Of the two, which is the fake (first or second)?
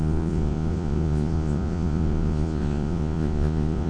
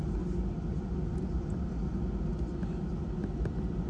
first